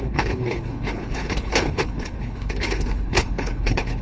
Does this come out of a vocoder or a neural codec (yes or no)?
yes